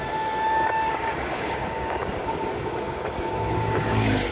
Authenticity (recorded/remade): remade